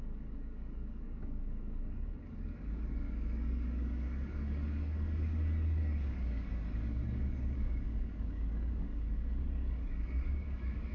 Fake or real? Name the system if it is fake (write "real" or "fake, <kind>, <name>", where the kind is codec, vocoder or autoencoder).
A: fake, codec, DAC